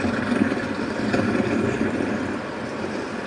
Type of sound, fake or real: real